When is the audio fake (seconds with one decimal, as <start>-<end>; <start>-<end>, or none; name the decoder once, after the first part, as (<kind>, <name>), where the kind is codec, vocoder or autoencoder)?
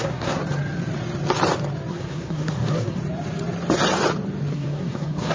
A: 0.0-0.4 (codec, SNAC); 1.9-3.0; 4.5-5.3